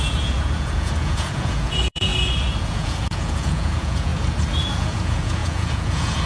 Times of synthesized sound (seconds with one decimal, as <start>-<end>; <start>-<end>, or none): 0.0-2.1; 2.6-4.1; 4.6-6.2